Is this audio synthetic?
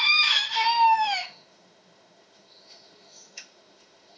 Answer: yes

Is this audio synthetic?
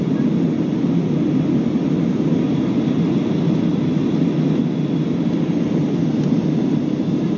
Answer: no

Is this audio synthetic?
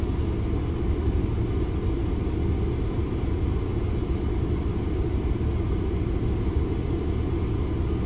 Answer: no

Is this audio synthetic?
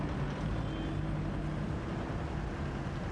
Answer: no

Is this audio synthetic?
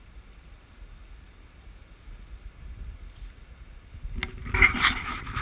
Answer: no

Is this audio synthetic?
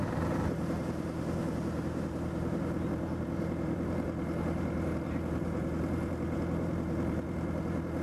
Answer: yes